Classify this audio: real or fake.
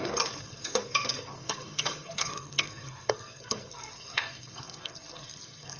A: fake